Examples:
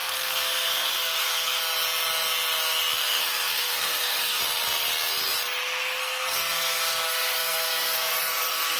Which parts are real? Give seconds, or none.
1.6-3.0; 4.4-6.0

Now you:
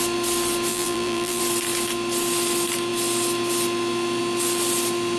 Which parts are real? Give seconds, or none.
0.0-0.7; 1.4-5.2

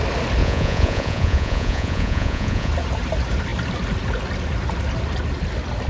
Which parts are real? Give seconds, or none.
0.0-0.4; 2.7-5.9

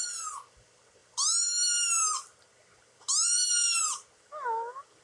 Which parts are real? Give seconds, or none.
0.0-5.0

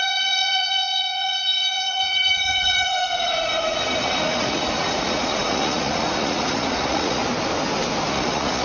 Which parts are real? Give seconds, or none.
7.2-8.1